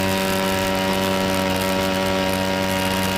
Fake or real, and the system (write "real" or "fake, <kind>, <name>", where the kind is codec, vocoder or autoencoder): real